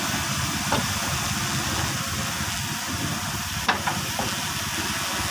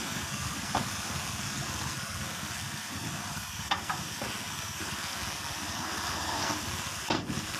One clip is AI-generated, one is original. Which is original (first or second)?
first